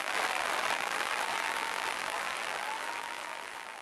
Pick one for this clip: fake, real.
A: fake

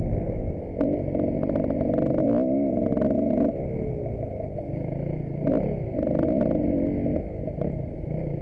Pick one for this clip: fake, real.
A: real